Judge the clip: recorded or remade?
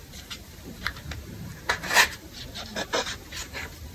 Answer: remade